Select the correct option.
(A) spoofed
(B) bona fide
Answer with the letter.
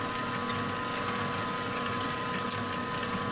B